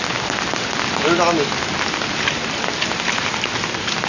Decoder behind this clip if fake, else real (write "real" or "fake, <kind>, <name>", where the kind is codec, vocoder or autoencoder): real